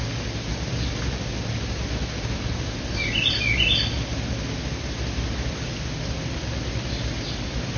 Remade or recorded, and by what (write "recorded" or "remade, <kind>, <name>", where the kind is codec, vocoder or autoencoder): recorded